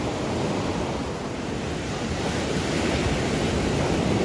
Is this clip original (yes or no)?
yes